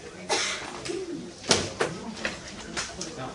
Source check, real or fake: real